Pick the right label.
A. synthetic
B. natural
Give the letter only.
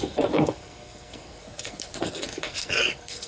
A